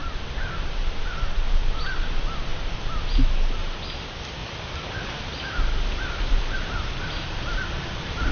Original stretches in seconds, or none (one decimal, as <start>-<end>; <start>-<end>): 2.0-4.4